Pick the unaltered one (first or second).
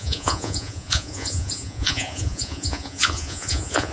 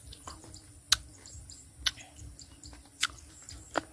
second